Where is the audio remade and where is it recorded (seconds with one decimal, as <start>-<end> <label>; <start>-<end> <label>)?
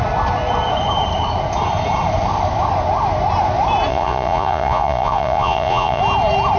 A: 0.0-3.9 recorded; 3.9-6.0 remade; 6.0-6.6 recorded